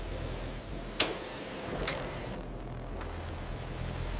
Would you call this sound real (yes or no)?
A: yes